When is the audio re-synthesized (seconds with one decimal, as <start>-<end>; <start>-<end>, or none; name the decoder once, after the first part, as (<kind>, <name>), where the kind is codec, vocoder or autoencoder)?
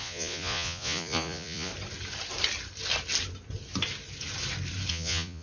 0.0-1.7 (vocoder, Vocos); 4.9-5.4